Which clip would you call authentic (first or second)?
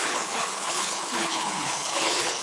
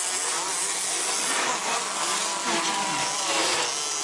second